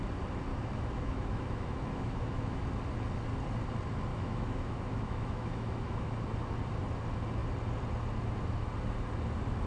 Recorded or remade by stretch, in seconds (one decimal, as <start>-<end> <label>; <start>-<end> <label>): 0.0-0.5 recorded; 0.5-2.6 remade; 2.6-4.1 recorded; 4.1-6.1 remade; 6.1-9.7 recorded